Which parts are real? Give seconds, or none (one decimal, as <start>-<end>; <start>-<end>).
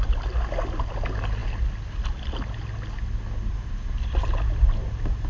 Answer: 0.0-5.3